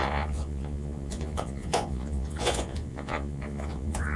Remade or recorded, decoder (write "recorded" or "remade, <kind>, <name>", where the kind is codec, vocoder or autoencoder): remade, vocoder, Vocos